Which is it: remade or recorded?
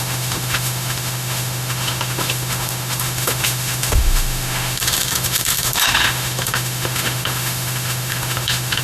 remade